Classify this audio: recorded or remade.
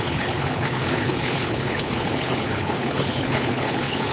remade